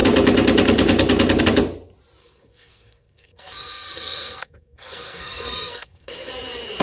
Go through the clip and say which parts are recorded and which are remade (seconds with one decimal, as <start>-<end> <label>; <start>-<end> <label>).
0.0-2.2 recorded; 2.2-6.3 remade; 6.3-6.8 recorded